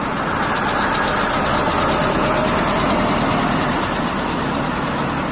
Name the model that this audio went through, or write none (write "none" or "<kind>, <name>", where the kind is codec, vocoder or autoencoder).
none